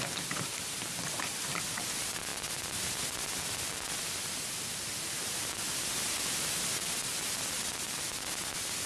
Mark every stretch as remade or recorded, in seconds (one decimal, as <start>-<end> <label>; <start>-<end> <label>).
0.0-8.9 recorded